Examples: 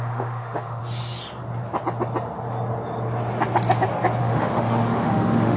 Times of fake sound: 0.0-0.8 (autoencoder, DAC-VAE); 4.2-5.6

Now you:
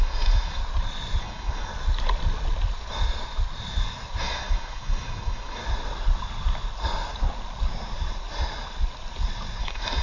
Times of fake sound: 0.0-0.6 (autoencoder, DAC-VAE); 1.2-1.7; 4.2-5.6; 9.6-10.0

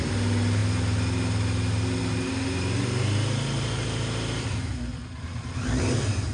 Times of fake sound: none

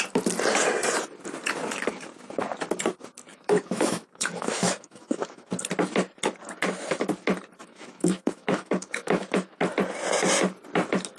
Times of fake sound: 3.3-5.5 (autoencoder, DAC-VAE); 7.6-9.6

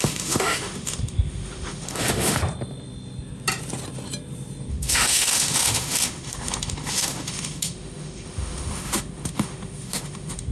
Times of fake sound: 0.0-2.4 (autoencoder, DAC-VAE); 4.7-10.5